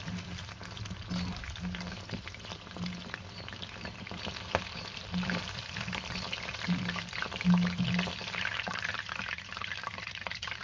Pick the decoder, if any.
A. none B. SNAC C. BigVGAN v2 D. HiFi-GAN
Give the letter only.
A